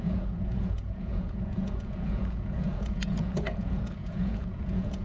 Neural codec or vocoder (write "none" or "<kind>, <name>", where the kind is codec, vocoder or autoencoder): vocoder, Vocos